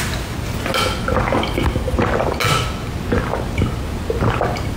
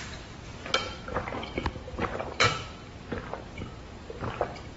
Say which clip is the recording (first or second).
first